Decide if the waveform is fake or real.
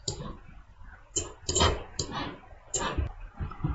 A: fake